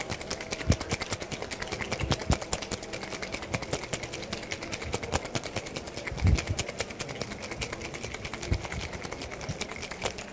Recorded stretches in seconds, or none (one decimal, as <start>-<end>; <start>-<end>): 0.0-10.3